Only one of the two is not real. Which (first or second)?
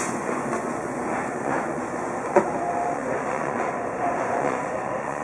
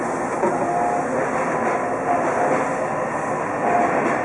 first